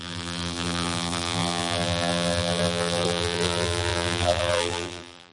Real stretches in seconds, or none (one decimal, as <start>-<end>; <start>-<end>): none